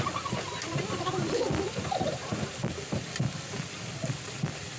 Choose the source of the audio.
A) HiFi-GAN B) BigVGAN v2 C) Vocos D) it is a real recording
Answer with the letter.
D